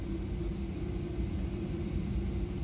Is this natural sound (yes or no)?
yes